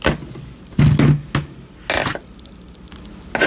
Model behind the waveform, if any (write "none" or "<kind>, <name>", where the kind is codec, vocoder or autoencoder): none